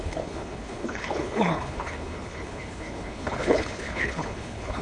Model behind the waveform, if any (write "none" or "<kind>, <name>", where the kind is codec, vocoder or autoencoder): codec, HILCodec